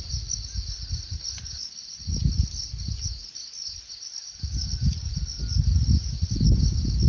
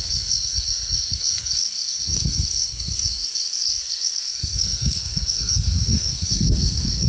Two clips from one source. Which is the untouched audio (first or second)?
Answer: first